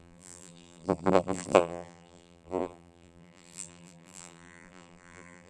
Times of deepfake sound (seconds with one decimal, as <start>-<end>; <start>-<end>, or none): 0.0-5.5